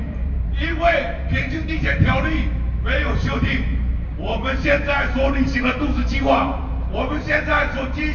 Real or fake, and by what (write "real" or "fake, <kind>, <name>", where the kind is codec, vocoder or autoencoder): fake, vocoder, BigVGAN v2